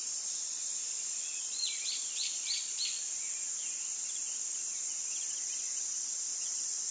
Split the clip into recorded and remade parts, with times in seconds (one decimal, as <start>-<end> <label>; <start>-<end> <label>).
0.0-0.7 remade; 0.7-1.1 recorded; 1.1-2.8 remade; 2.8-6.3 recorded; 6.3-6.9 remade